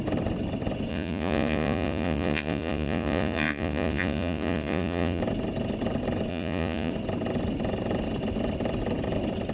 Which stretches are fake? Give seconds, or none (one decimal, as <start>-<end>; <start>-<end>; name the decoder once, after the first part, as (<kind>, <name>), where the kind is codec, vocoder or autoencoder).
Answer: 0.9-5.2 (vocoder, Vocos); 6.3-6.9